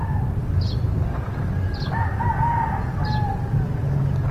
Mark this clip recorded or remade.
recorded